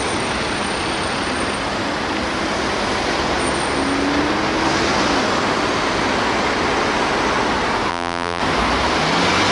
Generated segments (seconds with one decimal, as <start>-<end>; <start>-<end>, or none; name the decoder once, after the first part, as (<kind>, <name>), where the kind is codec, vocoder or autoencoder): 7.9-8.4 (vocoder, BigVGAN v2)